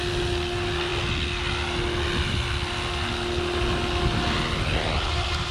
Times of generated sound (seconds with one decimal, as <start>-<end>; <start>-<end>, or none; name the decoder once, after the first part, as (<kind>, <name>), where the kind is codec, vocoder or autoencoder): none